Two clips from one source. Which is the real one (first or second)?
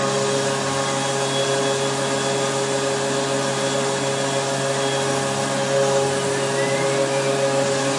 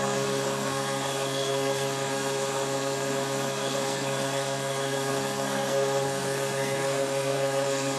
first